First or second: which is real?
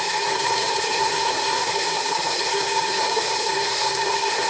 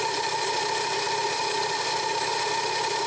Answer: second